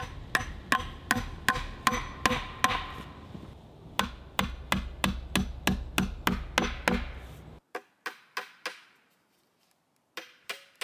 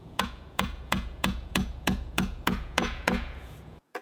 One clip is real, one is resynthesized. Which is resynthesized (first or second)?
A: second